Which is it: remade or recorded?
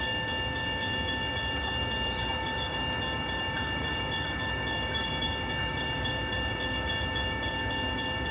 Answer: remade